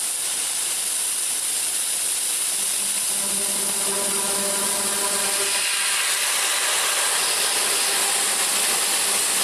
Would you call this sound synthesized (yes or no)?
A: no